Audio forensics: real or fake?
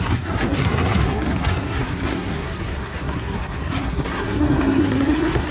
fake